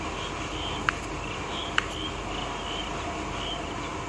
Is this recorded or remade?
recorded